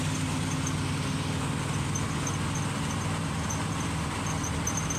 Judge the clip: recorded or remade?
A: recorded